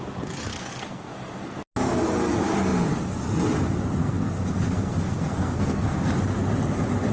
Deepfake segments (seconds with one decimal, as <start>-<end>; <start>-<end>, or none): 0.5-1.6; 4.0-6.1